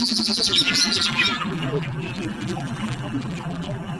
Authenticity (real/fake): fake